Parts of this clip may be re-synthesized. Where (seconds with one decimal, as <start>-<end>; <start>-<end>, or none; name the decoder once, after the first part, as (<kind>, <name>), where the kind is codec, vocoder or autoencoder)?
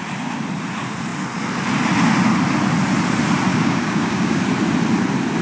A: 3.5-4.4 (codec, DAC)